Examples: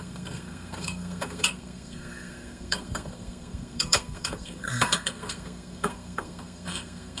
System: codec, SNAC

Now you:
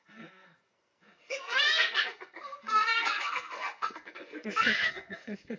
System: codec, SNAC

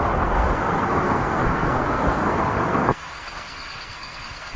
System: codec, SNAC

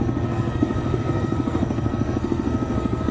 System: codec, SNAC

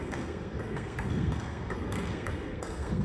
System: codec, SNAC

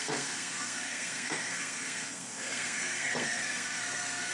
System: codec, SNAC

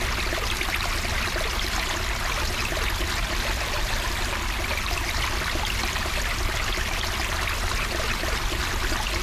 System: none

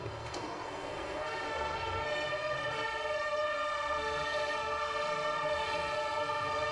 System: codec, SNAC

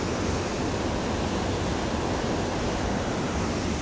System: none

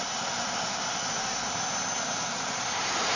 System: none